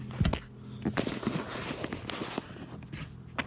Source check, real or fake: real